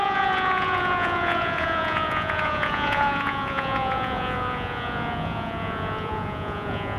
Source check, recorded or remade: remade